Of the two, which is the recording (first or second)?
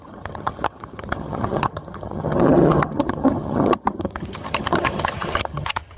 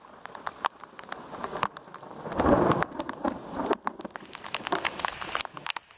second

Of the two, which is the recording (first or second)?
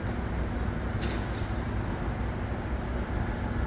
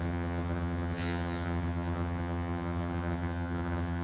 first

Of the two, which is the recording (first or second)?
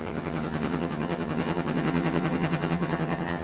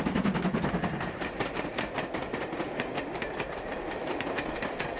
second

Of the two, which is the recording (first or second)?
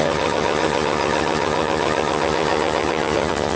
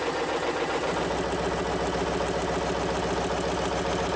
second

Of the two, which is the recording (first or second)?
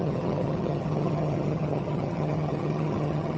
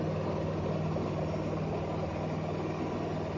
second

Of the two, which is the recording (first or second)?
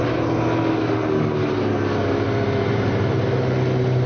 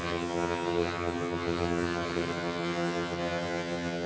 first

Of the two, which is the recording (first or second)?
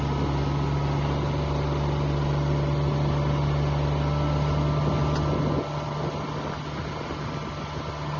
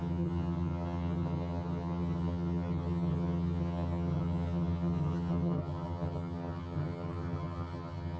first